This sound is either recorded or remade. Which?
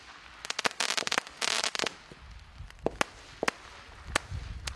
recorded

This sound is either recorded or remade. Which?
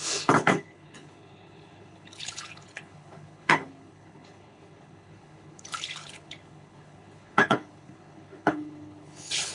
remade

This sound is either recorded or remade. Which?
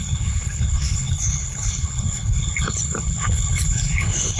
remade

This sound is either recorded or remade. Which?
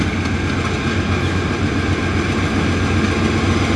recorded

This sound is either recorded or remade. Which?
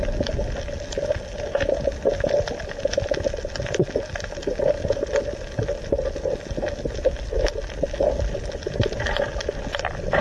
recorded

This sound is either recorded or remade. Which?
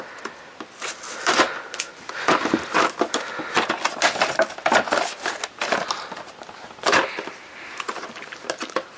recorded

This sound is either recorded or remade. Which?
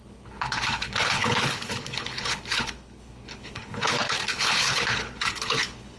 remade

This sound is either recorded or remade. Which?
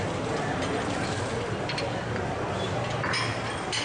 recorded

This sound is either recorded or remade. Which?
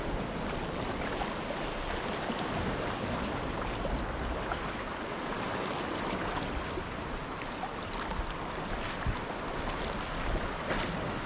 recorded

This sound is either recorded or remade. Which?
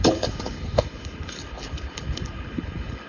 remade